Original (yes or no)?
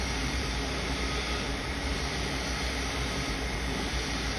no